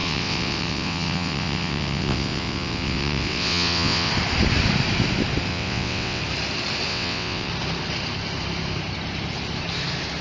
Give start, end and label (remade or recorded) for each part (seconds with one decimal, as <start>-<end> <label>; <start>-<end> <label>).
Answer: 0.0-4.1 remade; 4.1-5.5 recorded; 5.5-6.2 remade; 6.2-6.9 recorded; 6.9-7.5 remade; 7.5-10.2 recorded